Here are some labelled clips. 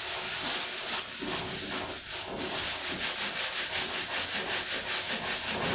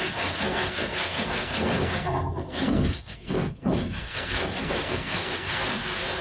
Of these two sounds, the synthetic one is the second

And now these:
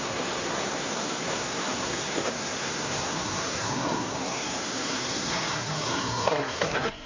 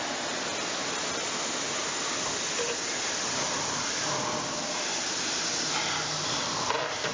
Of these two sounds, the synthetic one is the first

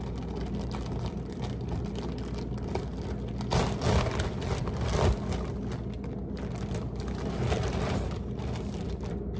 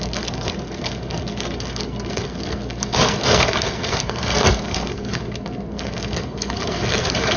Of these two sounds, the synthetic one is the second